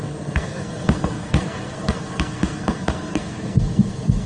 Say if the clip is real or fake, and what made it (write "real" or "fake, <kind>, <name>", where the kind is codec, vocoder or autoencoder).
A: fake, codec, SNAC